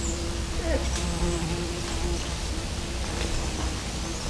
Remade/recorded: recorded